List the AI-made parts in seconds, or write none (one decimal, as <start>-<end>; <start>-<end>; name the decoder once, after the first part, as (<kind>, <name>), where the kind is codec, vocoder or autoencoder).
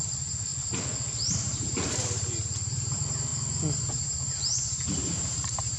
0.0-0.5 (vocoder, BigVGAN v2); 1.4-5.8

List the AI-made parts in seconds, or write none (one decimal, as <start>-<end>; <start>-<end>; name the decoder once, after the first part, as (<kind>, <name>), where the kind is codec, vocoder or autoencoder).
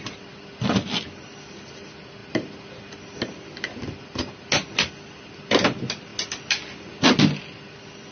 none